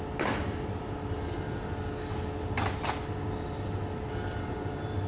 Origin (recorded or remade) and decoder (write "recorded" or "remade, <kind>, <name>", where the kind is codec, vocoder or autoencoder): recorded